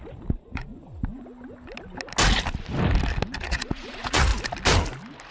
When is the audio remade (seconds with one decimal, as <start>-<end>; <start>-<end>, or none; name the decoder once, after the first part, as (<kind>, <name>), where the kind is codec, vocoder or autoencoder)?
0.0-0.8 (vocoder, Vocos); 3.4-4.3